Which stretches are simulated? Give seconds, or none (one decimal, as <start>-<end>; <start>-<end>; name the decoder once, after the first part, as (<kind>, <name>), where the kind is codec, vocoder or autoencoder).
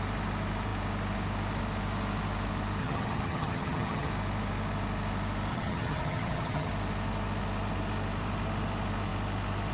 2.8-4.1 (vocoder, HiFi-GAN); 5.5-6.7